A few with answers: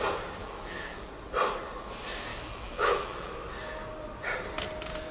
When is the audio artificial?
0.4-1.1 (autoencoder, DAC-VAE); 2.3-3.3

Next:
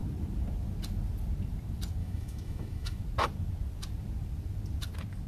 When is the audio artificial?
2.0-3.0 (autoencoder, DAC-VAE)

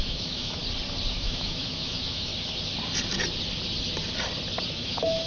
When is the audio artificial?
0.0-0.6 (autoencoder, DAC-VAE); 1.1-2.3; 4.7-5.3

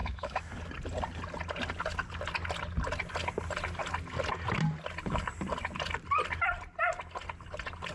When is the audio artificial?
0.0-0.5 (autoencoder, DAC-VAE)

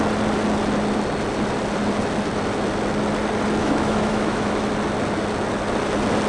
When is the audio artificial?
3.6-4.7 (autoencoder, DAC-VAE)